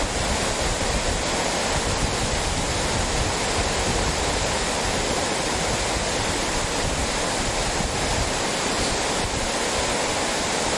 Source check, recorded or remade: recorded